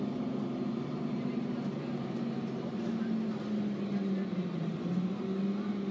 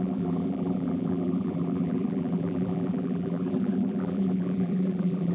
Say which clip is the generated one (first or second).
second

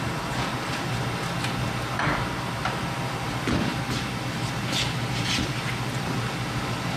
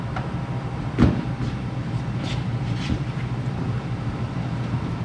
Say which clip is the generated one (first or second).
second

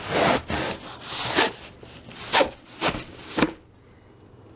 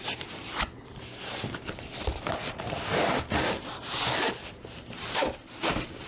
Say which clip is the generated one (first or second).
second